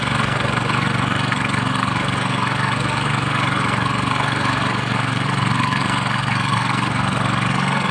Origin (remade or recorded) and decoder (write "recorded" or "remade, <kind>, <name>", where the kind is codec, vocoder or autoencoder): remade, codec, SNAC